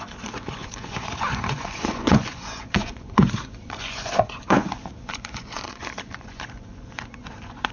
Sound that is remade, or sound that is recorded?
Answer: remade